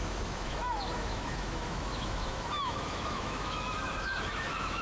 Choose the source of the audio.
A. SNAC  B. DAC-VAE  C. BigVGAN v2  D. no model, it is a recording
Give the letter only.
B